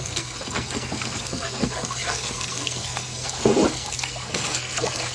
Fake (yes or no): yes